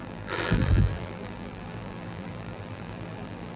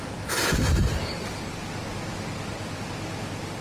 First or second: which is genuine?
second